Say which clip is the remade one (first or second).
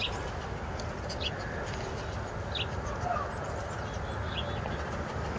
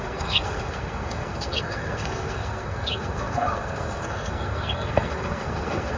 second